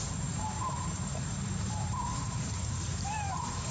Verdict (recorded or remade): remade